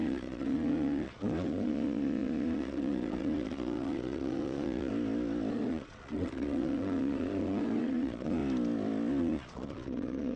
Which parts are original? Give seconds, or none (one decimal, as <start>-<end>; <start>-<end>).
4.9-5.5; 8.4-9.2